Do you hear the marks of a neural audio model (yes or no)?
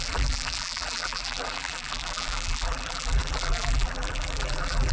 yes